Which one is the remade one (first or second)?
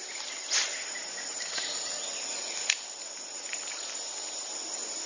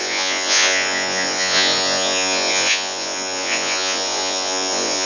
second